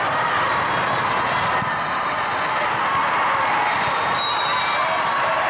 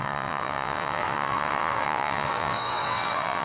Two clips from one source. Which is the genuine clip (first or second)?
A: first